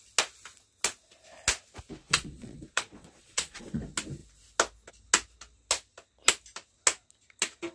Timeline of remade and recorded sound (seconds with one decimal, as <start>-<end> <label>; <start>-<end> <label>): 0.0-2.0 recorded; 2.0-3.8 remade; 3.8-7.7 recorded